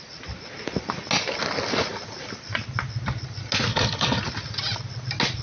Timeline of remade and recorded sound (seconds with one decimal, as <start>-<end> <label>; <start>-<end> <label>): 0.0-3.7 recorded; 3.7-4.2 remade; 4.2-5.4 recorded